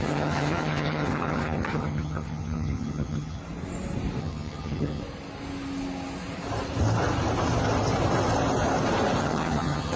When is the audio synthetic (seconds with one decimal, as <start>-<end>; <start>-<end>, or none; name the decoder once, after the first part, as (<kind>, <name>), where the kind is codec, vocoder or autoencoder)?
0.0-3.4 (vocoder, HiFi-GAN); 4.2-5.0; 9.2-10.0